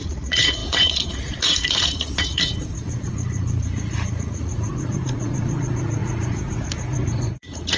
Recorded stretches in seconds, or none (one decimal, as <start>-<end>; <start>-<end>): none